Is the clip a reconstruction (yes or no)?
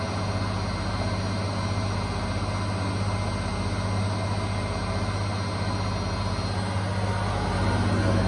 no